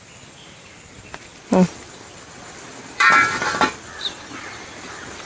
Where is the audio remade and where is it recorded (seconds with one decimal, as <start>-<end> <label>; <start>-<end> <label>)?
0.0-1.3 recorded; 1.3-4.5 remade; 4.5-5.3 recorded